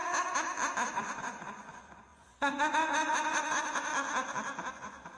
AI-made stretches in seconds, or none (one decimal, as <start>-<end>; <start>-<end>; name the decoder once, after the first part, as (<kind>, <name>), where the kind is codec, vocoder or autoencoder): 0.9-3.9 (vocoder, Vocos); 4.7-5.2